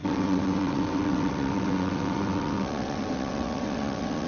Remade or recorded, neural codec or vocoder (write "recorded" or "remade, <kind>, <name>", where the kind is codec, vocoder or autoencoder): remade, vocoder, WaveNeXt